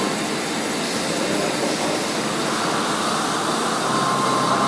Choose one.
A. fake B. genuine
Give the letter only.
B